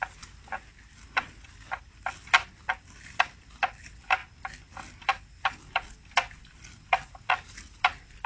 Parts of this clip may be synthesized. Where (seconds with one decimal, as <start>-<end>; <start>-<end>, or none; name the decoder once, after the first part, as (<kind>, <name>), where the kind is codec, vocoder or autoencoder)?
none